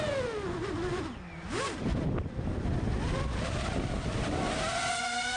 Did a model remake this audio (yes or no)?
no